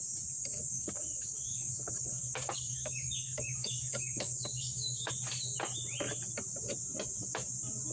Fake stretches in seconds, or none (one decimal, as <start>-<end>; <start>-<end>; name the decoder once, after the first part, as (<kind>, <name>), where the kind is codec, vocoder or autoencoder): 0.4-5.1 (codec, DAC)